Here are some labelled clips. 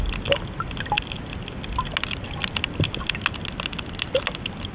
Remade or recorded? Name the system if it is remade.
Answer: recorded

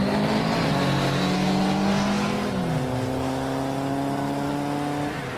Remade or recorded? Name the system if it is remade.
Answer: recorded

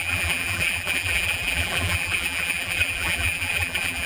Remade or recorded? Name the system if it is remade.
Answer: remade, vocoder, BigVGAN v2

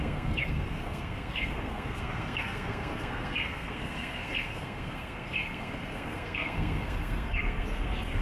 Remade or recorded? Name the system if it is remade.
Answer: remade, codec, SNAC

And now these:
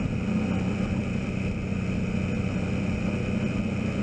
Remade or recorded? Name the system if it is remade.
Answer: recorded